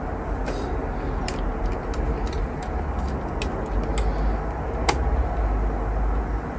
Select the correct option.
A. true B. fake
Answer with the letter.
A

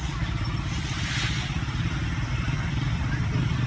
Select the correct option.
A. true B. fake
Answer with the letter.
A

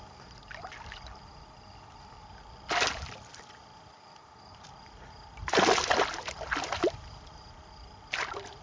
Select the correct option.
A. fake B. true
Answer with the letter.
B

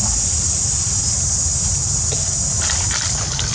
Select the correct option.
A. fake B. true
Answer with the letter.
B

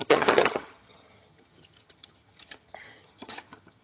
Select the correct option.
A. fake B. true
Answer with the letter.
A